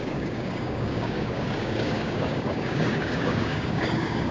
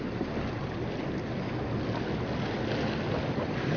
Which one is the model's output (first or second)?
first